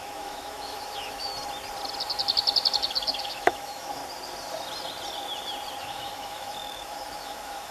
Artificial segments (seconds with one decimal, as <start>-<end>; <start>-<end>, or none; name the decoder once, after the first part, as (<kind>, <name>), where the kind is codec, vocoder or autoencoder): 0.0-1.3 (autoencoder, DAC-VAE); 3.2-4.0; 5.8-7.7